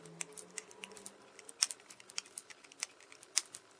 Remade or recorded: recorded